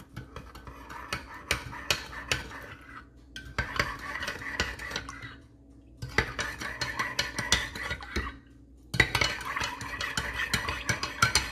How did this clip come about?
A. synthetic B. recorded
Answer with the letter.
B